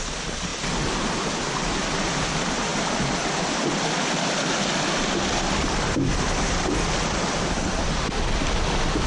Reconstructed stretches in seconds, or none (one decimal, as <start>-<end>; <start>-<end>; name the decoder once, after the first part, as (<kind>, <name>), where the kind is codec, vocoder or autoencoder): 2.7-7.0 (vocoder, BigVGAN v2)